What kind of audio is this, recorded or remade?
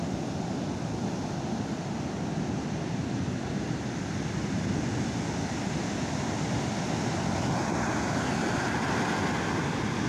recorded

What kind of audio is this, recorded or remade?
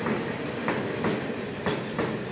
recorded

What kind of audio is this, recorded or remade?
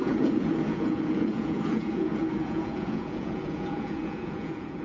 remade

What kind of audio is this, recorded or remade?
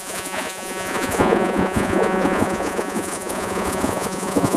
remade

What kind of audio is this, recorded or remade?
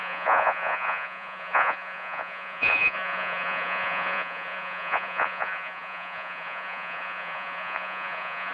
remade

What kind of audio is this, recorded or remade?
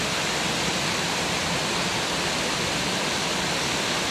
recorded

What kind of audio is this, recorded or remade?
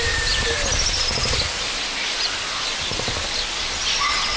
recorded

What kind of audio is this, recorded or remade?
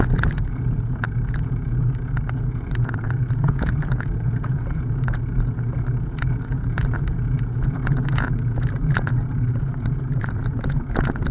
remade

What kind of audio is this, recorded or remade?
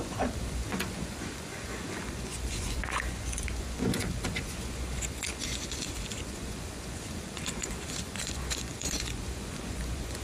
remade